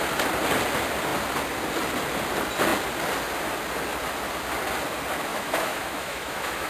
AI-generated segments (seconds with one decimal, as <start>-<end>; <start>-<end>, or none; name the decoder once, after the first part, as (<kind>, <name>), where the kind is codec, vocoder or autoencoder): 5.3-6.7 (autoencoder, DAC-VAE)

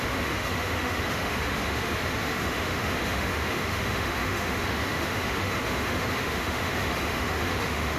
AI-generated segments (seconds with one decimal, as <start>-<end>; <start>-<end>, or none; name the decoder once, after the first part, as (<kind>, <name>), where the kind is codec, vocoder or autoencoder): 0.0-8.0 (autoencoder, DAC-VAE)

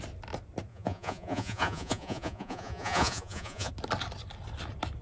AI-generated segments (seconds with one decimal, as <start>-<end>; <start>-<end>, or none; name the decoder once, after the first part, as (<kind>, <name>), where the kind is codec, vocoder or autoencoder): 0.7-3.7 (vocoder, Vocos)

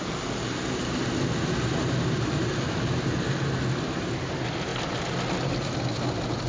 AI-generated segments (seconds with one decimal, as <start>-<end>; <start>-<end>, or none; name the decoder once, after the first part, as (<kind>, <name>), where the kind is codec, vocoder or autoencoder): none